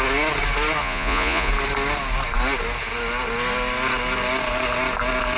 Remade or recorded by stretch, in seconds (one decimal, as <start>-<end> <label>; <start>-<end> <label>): 0.0-0.8 recorded; 0.8-1.5 remade; 1.5-5.4 recorded